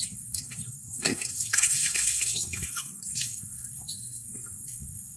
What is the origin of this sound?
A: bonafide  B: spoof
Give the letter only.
B